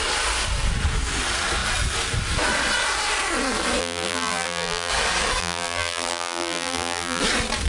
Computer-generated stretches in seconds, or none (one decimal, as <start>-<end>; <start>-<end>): 3.8-4.9; 5.4-7.2